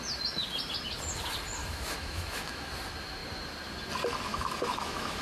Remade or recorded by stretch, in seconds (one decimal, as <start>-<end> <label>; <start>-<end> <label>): 0.0-1.6 recorded; 1.6-2.7 remade; 2.7-4.3 recorded; 4.3-5.2 remade